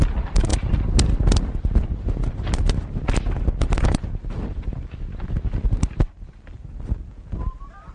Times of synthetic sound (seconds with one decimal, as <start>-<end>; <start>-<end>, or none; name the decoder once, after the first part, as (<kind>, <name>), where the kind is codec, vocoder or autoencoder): none